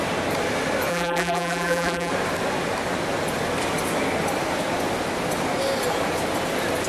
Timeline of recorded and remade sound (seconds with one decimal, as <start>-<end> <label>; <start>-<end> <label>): 0.0-0.9 recorded; 0.9-2.1 remade; 2.1-6.9 recorded